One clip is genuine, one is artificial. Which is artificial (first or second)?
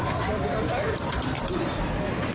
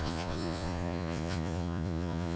second